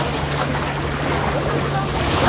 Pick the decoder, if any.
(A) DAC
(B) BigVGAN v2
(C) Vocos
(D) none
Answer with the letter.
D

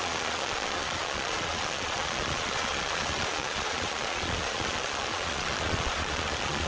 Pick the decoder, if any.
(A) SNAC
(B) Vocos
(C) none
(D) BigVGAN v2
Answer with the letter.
B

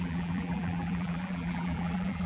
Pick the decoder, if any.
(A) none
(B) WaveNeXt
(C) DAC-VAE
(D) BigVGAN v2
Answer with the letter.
D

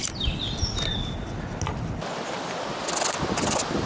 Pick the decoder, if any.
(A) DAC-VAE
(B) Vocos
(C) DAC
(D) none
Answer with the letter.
D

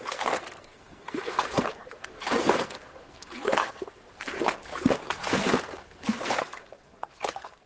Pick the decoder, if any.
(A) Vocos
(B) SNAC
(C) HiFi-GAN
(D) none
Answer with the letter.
B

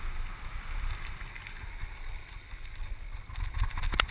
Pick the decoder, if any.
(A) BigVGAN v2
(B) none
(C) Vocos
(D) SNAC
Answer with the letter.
B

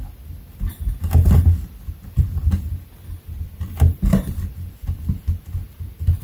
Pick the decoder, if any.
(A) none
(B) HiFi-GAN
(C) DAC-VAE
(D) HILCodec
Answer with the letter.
A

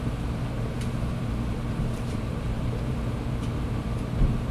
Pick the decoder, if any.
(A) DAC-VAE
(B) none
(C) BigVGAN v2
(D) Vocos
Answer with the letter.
C